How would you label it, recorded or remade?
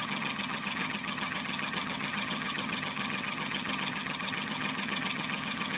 remade